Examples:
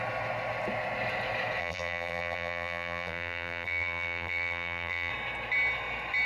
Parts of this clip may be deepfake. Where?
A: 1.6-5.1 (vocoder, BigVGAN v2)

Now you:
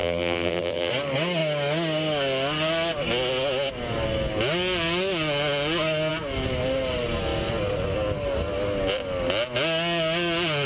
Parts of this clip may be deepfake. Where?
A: 0.0-0.9 (vocoder, BigVGAN v2)